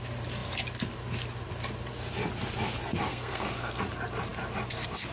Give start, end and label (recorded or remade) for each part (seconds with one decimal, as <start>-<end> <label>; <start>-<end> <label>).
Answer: 0.0-3.1 recorded; 3.1-3.8 remade; 3.8-5.1 recorded